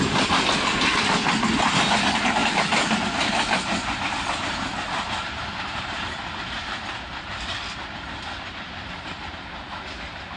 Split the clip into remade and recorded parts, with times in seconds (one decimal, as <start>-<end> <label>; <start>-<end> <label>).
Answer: 0.0-10.4 recorded